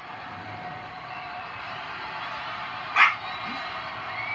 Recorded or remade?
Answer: remade